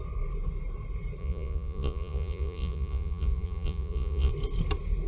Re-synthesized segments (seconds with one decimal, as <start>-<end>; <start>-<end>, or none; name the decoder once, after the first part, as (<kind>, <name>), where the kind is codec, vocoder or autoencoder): 1.2-4.3 (vocoder, Vocos)